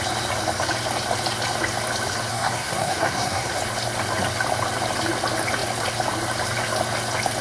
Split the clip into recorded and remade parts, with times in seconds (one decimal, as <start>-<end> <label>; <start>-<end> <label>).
0.0-2.3 recorded; 2.3-3.6 remade; 3.6-7.4 recorded